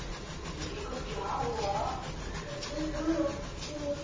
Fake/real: real